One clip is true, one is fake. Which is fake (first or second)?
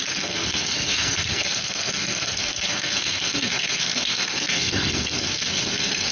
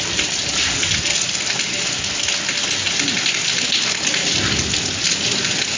first